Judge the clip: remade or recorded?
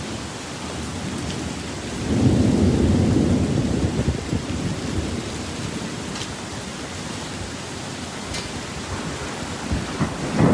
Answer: recorded